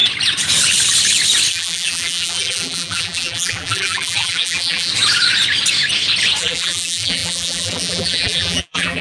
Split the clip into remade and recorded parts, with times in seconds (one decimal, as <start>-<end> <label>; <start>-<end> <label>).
0.0-1.5 recorded; 1.5-4.9 remade; 4.9-6.4 recorded; 6.4-9.0 remade